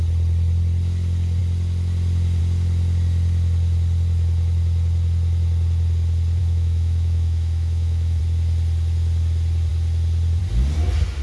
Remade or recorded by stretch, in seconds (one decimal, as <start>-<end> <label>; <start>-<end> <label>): 0.0-6.4 recorded; 6.4-8.2 remade; 8.2-11.2 recorded